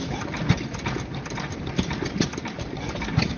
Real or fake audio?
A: real